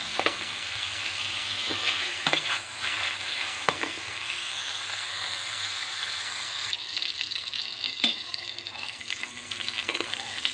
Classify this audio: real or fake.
fake